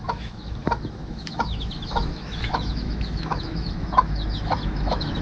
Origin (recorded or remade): remade